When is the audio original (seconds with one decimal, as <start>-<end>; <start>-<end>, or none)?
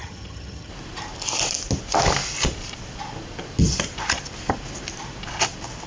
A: 0.7-5.9